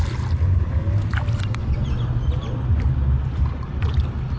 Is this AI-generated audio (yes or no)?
no